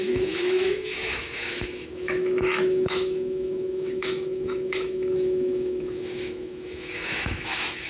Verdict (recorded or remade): remade